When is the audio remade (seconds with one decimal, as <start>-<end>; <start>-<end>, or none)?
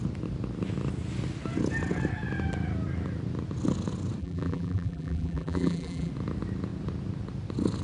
4.2-6.1